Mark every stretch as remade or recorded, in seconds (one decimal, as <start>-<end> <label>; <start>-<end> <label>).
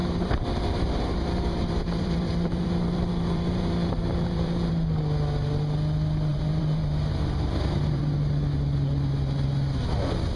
0.0-4.7 remade; 4.7-6.3 recorded; 6.3-8.0 remade; 8.0-10.4 recorded